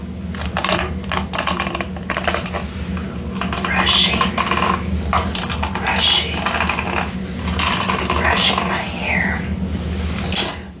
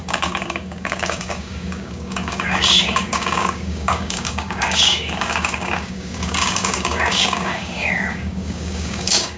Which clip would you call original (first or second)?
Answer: first